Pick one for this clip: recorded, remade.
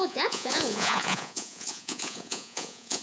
remade